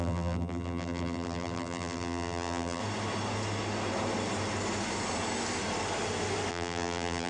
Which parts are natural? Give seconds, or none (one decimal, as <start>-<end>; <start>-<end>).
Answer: 2.8-6.5